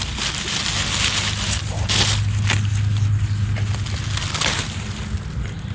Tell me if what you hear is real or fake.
real